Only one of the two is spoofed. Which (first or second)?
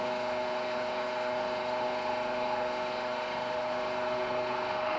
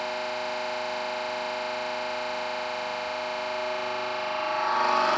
first